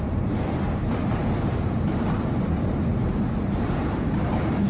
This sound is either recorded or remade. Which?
remade